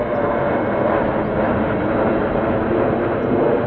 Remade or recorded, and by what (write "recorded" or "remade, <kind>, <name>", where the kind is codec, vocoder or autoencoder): recorded